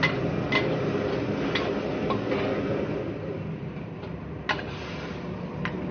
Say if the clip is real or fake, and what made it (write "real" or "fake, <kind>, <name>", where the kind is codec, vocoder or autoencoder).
real